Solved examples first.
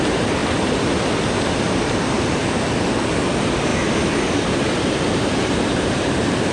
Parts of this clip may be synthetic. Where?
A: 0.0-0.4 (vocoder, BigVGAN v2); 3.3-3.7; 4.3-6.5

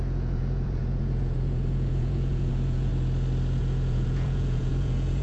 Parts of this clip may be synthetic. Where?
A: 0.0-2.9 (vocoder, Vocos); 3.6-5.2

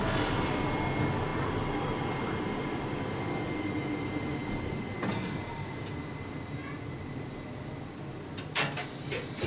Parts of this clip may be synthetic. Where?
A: none